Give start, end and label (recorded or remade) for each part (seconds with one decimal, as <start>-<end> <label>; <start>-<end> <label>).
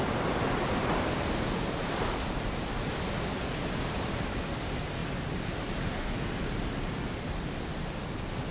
0.0-8.5 recorded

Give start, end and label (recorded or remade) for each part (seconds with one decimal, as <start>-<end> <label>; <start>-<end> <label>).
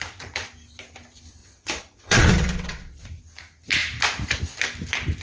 0.0-1.4 recorded; 1.4-3.0 remade; 3.0-5.2 recorded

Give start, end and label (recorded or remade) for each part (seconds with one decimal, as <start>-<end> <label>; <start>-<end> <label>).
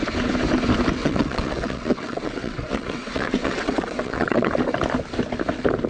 0.0-1.0 recorded; 1.0-4.5 remade; 4.5-5.9 recorded